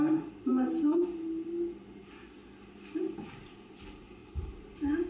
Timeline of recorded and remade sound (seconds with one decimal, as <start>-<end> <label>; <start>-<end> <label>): 0.0-5.1 recorded